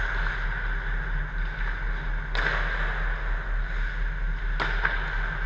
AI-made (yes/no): no